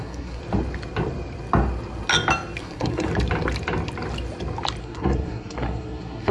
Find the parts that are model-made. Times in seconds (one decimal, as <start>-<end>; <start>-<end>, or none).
0.0-0.4; 2.6-3.1; 4.8-6.3